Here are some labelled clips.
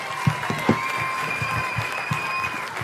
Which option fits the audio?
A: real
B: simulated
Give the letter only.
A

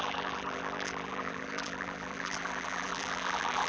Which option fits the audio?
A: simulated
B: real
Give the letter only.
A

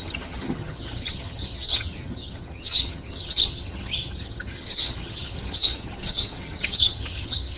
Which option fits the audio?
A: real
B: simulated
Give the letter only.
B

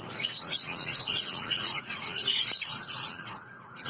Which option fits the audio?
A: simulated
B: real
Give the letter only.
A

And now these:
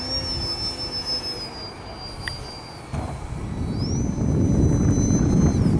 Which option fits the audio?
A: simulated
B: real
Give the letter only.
B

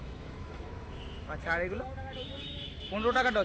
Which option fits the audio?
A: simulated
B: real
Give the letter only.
A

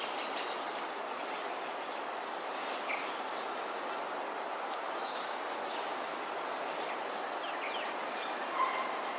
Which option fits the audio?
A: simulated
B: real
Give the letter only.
B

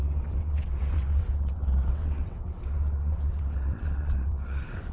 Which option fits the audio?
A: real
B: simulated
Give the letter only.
B